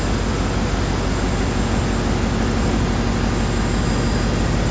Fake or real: real